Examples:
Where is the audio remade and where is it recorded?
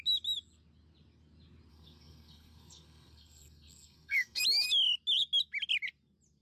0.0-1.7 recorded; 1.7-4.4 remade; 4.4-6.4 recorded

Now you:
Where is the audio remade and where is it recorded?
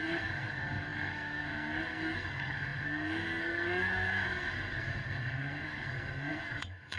0.0-7.0 remade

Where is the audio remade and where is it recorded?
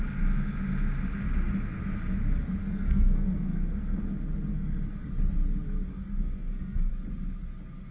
0.0-2.6 recorded; 2.6-4.0 remade; 4.0-4.5 recorded; 4.5-5.1 remade; 5.1-5.9 recorded; 5.9-6.9 remade; 6.9-7.9 recorded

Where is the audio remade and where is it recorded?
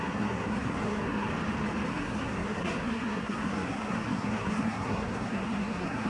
0.0-1.3 remade; 1.3-1.9 recorded; 1.9-6.1 remade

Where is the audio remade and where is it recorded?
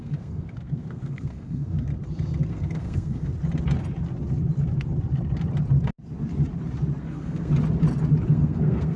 0.0-1.9 remade; 1.9-2.5 recorded; 2.5-3.3 remade; 3.3-7.0 recorded; 7.0-7.5 remade; 7.5-8.3 recorded; 8.3-9.0 remade